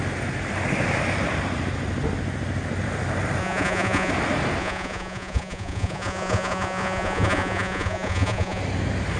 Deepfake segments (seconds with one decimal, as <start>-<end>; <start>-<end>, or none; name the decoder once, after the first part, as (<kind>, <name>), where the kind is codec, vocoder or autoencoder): 3.4-4.1 (vocoder, Vocos); 4.6-8.6